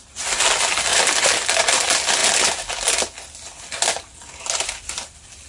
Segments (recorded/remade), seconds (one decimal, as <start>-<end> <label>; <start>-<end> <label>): 0.0-5.5 recorded